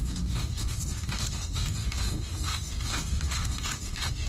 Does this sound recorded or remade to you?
remade